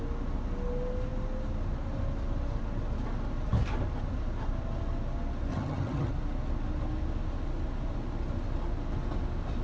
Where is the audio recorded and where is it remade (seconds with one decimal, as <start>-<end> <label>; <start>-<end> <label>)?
0.0-5.5 recorded; 5.5-6.1 remade; 6.1-9.6 recorded